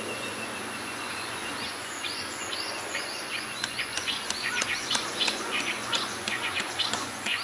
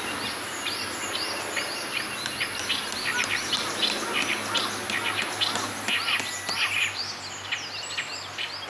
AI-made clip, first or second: first